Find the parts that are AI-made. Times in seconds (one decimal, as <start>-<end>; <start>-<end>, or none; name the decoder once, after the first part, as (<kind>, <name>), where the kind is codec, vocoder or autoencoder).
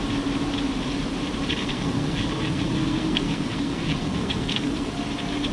1.6-4.9 (codec, SNAC)